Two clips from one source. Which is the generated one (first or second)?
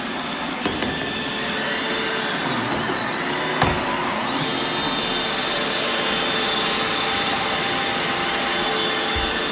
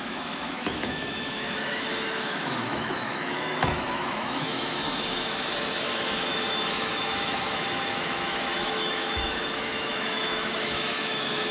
second